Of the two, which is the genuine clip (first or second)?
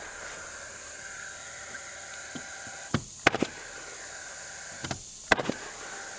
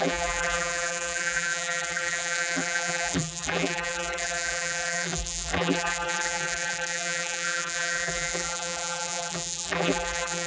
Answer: first